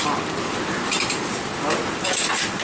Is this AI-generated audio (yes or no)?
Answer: no